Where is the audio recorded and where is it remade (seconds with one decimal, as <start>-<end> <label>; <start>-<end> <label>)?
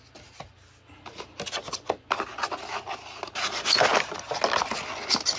0.0-5.4 recorded